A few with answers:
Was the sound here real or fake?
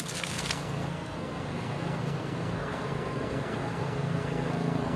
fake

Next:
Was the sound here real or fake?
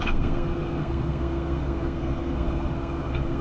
fake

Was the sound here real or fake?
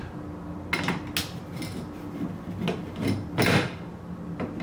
real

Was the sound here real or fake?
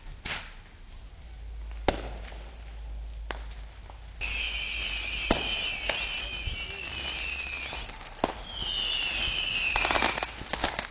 real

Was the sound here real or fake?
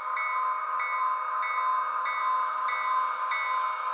real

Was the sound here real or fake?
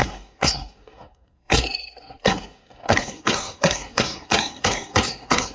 fake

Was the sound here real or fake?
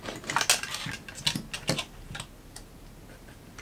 real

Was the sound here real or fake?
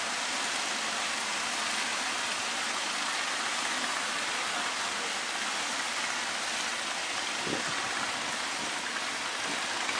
real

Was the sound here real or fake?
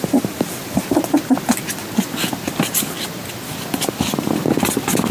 real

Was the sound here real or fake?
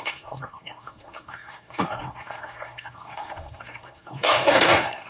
fake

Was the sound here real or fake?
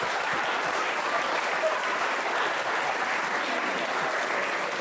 real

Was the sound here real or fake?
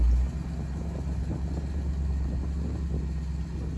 real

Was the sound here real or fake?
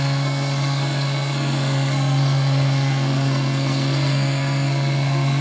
fake